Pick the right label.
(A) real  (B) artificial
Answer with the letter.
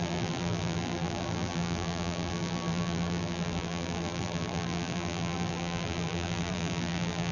B